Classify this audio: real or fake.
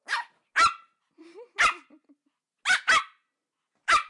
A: real